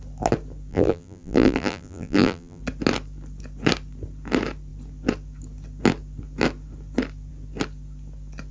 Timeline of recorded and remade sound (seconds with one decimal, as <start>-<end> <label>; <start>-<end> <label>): 0.0-0.7 recorded; 0.7-2.6 remade; 2.6-8.5 recorded